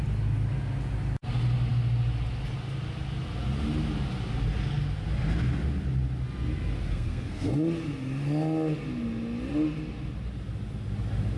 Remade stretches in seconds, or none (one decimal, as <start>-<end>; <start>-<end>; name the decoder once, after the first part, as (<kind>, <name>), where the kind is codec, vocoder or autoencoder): 6.8-7.5 (codec, SNAC)